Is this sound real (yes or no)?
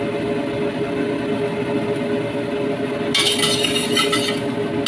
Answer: yes